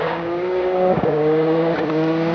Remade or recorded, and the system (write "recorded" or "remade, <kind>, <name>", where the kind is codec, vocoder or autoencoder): remade, codec, DAC